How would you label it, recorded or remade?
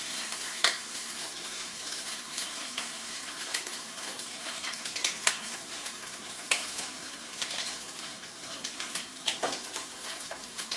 remade